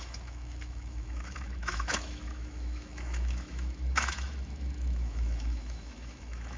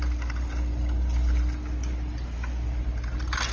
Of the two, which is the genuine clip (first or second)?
second